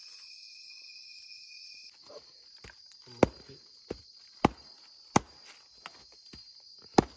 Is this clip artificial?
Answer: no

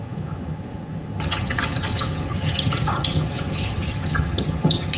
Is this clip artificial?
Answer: yes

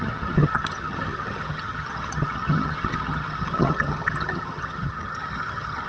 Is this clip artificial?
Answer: yes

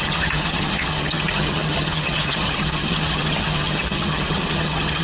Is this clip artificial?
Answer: yes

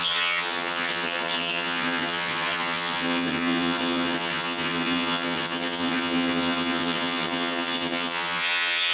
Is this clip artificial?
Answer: yes